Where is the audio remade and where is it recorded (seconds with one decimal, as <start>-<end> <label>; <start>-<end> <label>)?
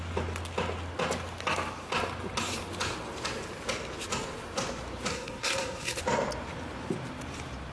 0.0-5.1 recorded; 5.1-6.0 remade; 6.0-7.7 recorded